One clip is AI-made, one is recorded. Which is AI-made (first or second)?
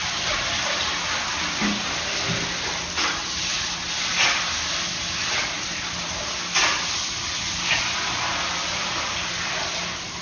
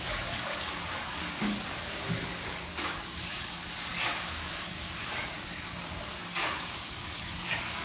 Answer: second